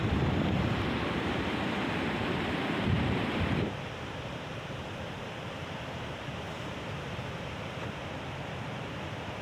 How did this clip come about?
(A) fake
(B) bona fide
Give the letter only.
A